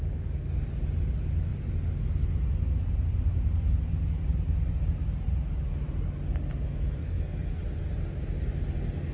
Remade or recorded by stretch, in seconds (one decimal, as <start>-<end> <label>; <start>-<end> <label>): 0.0-7.0 recorded; 7.0-7.6 remade; 7.6-9.1 recorded